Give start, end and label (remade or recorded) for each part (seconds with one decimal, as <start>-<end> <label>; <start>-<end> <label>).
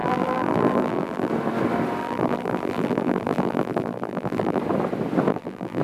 0.0-1.3 remade; 1.3-2.0 recorded; 2.0-4.6 remade; 4.6-5.3 recorded; 5.3-5.8 remade